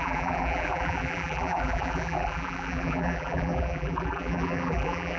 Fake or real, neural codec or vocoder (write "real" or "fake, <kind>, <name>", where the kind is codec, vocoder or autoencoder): fake, vocoder, BigVGAN v2